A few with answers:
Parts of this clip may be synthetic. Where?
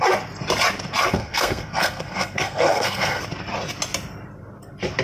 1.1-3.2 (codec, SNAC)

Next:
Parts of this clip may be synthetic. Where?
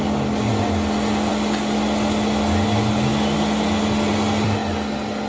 none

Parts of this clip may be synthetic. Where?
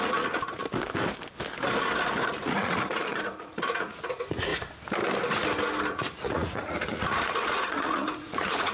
0.0-0.6 (vocoder, Vocos); 2.4-4.5; 5.9-8.7